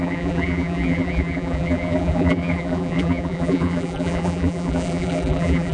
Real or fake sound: fake